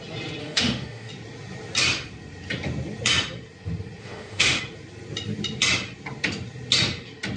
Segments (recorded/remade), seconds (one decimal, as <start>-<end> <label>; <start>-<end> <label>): 0.0-0.4 recorded; 0.4-1.1 remade; 1.1-4.0 recorded; 4.0-4.6 remade; 4.6-7.4 recorded